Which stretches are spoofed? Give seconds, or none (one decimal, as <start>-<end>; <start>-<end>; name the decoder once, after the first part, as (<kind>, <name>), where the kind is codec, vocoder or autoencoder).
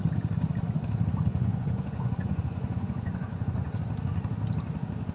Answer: 1.3-3.8 (vocoder, Vocos)